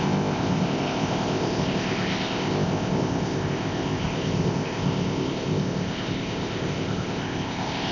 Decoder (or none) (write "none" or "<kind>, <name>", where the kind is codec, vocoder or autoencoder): codec, ZipCodec